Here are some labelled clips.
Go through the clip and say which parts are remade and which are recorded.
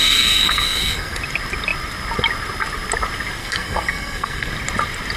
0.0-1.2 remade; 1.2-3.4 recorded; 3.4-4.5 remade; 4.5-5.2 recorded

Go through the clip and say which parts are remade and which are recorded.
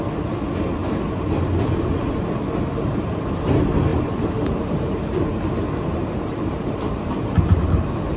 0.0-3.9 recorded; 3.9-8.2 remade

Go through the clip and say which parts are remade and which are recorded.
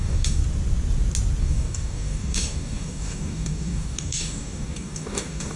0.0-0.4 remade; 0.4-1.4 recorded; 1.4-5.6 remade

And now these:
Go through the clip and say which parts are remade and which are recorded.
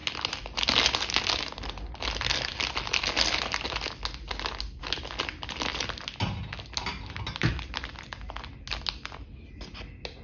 0.0-10.2 recorded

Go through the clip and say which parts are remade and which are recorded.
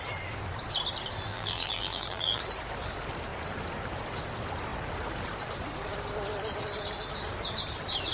0.0-1.3 recorded; 1.3-2.4 remade; 2.4-8.1 recorded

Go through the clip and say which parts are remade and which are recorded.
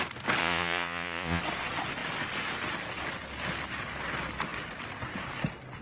0.0-0.4 recorded; 0.4-1.4 remade; 1.4-5.8 recorded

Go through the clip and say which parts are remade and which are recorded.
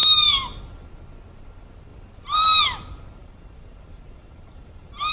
0.0-3.2 recorded; 3.2-5.1 remade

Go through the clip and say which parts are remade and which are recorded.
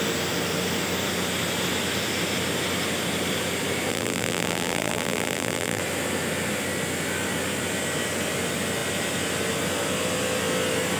0.0-3.9 recorded; 3.9-5.8 remade; 5.8-11.0 recorded